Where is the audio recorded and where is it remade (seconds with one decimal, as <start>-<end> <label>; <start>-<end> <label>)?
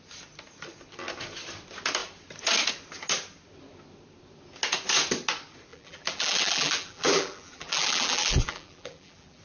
0.0-5.7 recorded; 5.7-9.4 remade